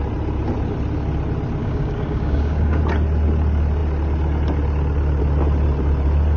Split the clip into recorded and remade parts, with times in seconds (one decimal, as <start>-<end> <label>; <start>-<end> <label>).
0.0-1.6 recorded; 1.6-2.8 remade; 2.8-6.4 recorded

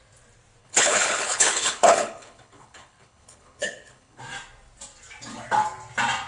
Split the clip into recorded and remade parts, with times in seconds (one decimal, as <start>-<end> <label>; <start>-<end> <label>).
0.0-0.6 recorded; 0.6-4.2 remade; 4.2-6.3 recorded

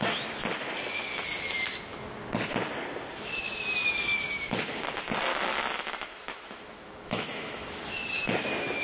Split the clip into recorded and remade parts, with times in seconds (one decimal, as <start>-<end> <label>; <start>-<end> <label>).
0.0-5.3 recorded; 5.3-7.8 remade; 7.8-8.8 recorded

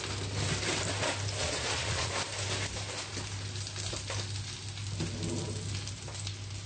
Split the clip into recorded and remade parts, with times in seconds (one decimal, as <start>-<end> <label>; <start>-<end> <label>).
0.0-1.4 recorded; 1.4-2.1 remade; 2.1-6.7 recorded

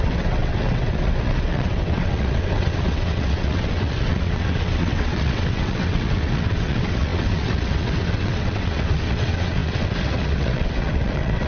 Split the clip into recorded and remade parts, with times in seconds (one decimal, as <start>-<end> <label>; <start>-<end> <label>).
0.0-11.5 remade

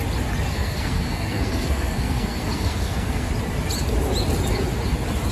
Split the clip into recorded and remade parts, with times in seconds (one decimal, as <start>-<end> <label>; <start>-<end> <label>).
0.0-0.5 recorded; 0.5-3.3 remade; 3.3-5.3 recorded

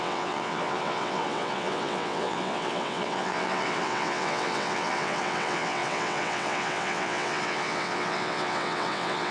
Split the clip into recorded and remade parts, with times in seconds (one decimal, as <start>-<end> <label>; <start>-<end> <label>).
0.0-9.3 remade

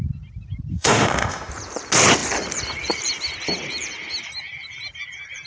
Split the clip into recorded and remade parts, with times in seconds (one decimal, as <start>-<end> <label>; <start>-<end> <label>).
0.0-0.7 recorded; 0.7-1.5 remade; 1.5-5.5 recorded